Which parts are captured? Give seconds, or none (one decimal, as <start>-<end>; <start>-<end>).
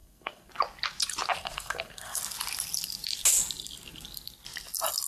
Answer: 0.5-1.4; 2.2-5.1